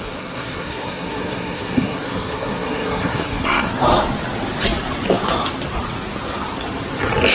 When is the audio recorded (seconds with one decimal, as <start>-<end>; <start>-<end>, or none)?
3.7-7.3